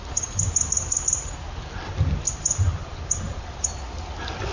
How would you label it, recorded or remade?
recorded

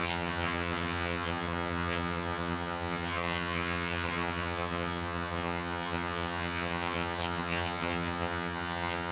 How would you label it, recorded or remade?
remade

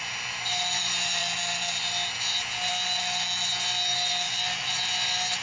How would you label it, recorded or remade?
recorded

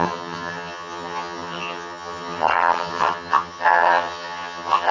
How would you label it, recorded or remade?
remade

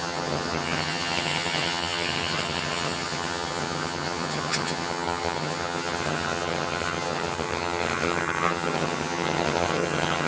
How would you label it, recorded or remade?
remade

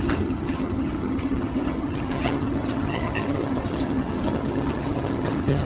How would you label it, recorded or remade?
remade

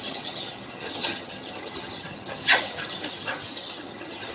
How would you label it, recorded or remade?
remade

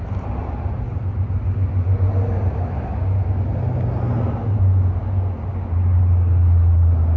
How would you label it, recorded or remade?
recorded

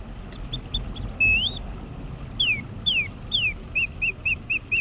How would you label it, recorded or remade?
recorded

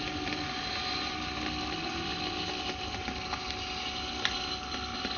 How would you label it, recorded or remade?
recorded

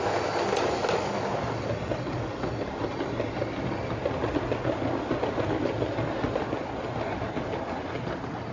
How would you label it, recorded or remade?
recorded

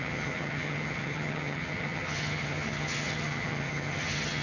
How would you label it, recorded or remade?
remade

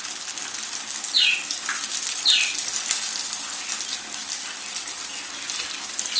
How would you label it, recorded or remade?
recorded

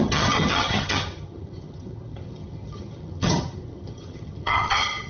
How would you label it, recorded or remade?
remade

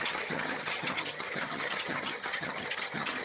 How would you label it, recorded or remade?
remade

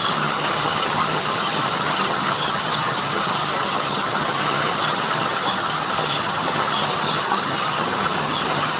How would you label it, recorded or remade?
remade